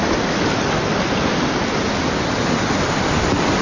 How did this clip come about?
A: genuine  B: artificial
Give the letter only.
A